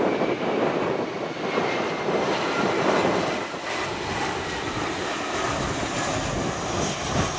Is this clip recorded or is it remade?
recorded